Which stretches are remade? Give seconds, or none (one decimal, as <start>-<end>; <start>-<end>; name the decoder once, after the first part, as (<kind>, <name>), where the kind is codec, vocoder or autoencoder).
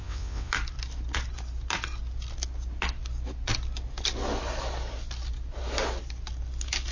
0.0-0.5 (vocoder, WaveNeXt)